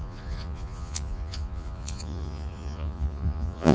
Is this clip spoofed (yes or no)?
yes